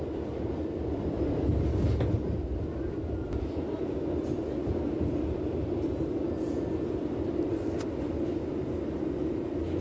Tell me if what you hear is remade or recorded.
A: recorded